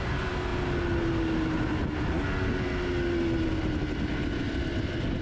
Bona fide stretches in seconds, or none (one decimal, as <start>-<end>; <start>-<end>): 0.0-5.2